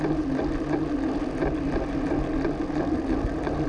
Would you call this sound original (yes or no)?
yes